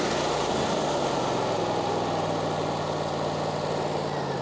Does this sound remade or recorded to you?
recorded